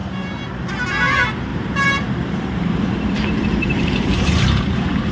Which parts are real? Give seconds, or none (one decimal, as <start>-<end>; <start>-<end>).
0.7-1.5; 4.6-5.1